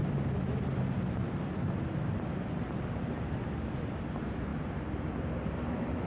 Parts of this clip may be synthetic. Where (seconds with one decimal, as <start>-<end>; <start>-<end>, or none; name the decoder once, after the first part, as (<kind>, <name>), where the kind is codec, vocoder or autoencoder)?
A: 0.5-1.2 (vocoder, BigVGAN v2); 3.4-4.5; 5.0-6.1